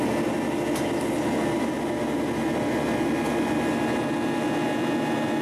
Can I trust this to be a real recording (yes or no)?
yes